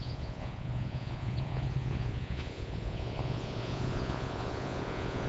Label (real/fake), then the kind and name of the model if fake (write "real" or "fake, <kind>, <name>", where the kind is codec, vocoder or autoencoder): fake, vocoder, Vocos